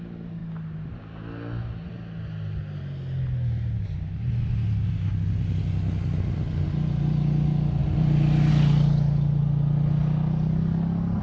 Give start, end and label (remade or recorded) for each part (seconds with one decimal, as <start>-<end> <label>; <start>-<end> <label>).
0.0-11.2 recorded